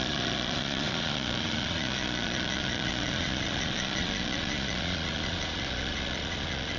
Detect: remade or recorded remade